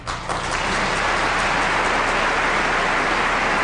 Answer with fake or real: real